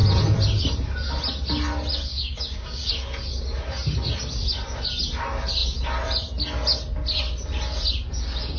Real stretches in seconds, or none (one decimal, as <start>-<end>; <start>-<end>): 0.0-2.1; 2.9-8.6